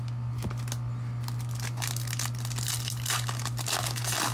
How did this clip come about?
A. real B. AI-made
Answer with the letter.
A